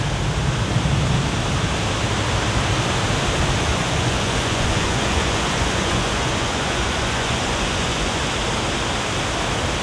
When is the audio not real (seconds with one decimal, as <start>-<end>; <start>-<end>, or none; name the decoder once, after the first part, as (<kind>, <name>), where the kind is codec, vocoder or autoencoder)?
3.7-8.2 (vocoder, Vocos)